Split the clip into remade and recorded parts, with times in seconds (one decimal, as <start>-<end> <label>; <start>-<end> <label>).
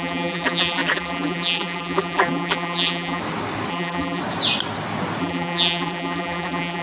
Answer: 0.0-3.2 remade; 3.2-3.7 recorded; 3.7-4.2 remade; 4.2-5.2 recorded; 5.2-6.8 remade